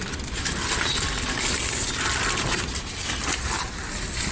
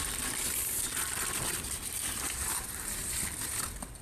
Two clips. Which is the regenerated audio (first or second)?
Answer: second